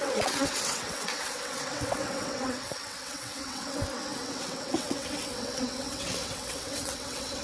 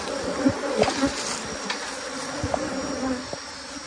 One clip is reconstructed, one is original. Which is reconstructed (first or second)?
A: first